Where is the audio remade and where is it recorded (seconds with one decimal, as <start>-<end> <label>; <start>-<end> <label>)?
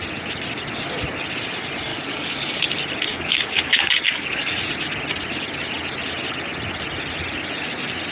0.0-1.9 recorded; 1.9-2.5 remade; 2.5-3.1 recorded; 3.1-4.6 remade; 4.6-8.1 recorded